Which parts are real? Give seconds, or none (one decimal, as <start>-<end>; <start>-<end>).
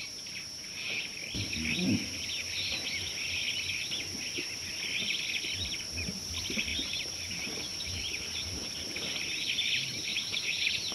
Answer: 0.0-6.7; 7.3-7.7; 9.5-10.1